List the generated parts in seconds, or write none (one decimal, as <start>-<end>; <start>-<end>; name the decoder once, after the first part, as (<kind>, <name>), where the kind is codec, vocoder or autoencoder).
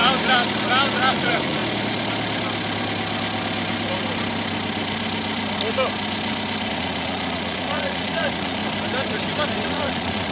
1.1-1.6 (vocoder, Vocos); 6.7-8.6; 9.6-10.3